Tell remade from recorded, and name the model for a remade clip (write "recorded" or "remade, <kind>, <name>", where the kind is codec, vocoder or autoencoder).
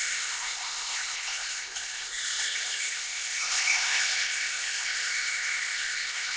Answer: remade, codec, ZipCodec